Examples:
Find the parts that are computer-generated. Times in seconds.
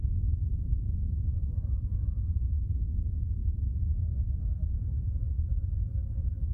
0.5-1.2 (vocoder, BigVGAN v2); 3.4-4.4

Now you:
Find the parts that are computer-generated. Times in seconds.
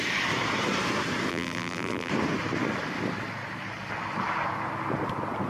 1.3-2.1 (vocoder, BigVGAN v2)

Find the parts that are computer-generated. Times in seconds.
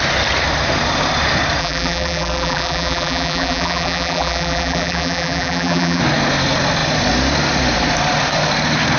1.6-6.0 (vocoder, BigVGAN v2)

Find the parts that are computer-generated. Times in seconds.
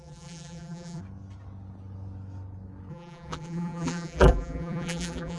0.0-1.0 (vocoder, BigVGAN v2); 2.9-5.4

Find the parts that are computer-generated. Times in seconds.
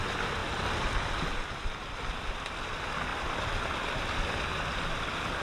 0.4-2.3 (vocoder, BigVGAN v2); 3.1-3.9; 4.5-5.4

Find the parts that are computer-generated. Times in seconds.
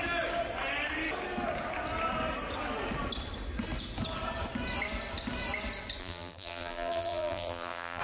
6.0-8.0 (vocoder, BigVGAN v2)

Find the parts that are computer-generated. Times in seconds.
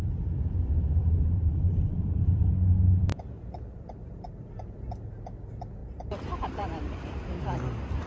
1.0-2.4 (vocoder, BigVGAN v2); 3.1-4.7; 5.8-7.4